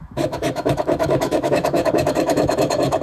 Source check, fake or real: fake